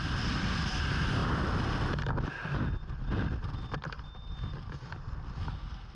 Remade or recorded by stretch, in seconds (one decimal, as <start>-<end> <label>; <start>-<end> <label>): 0.0-6.0 recorded